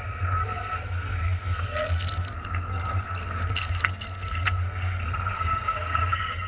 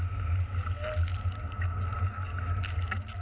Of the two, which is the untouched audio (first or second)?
second